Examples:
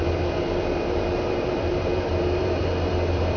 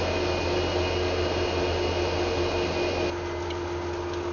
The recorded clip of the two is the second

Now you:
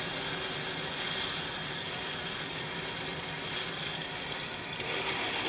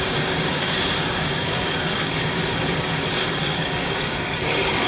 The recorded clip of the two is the first